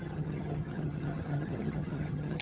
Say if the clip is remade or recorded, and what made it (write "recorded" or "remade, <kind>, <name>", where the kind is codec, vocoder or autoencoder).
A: remade, vocoder, HiFi-GAN